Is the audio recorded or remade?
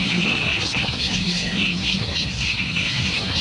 remade